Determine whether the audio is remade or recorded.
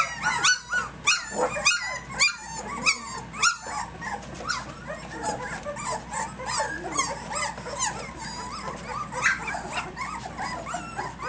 recorded